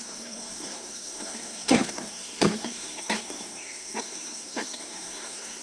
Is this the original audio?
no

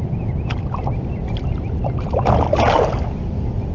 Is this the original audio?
yes